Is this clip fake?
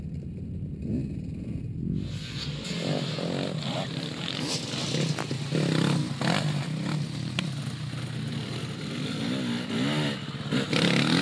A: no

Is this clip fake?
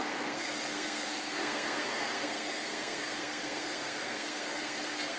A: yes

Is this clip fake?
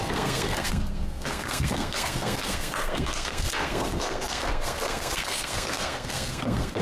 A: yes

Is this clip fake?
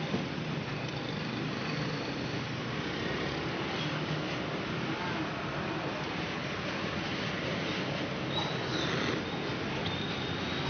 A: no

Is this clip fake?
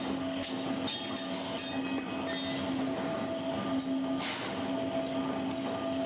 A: no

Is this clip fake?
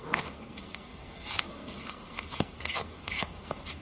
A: yes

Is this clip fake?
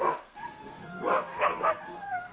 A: yes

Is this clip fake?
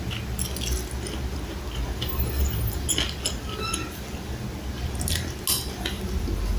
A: no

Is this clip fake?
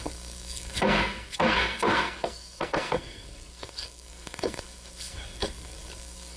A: yes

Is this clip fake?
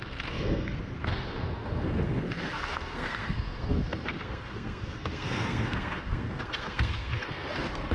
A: yes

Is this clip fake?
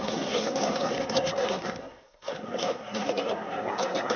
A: yes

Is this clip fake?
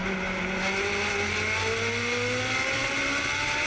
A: no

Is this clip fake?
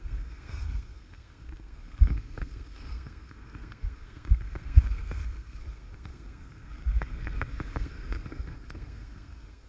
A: yes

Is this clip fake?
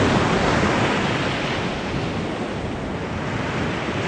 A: no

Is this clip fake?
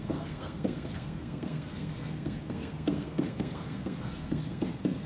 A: yes